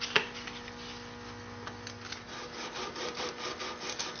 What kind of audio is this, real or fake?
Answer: real